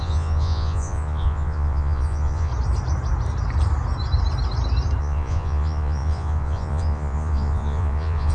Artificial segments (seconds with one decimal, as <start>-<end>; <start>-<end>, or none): 0.0-2.5; 5.0-8.3